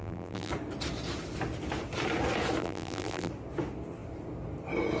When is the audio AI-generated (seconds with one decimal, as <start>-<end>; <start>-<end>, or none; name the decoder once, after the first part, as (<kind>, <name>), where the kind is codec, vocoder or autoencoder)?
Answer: 0.0-0.5 (vocoder, BigVGAN v2); 2.6-3.3